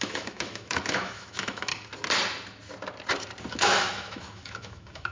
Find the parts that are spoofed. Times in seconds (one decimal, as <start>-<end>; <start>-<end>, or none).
0.0-1.7; 3.5-5.1